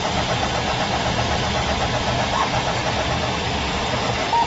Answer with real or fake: real